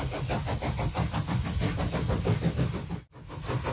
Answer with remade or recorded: recorded